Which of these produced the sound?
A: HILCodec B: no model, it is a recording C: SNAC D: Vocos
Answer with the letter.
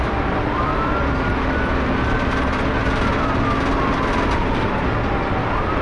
B